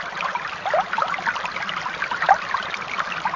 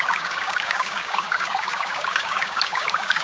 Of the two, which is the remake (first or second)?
second